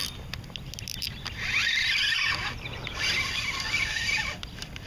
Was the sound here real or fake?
real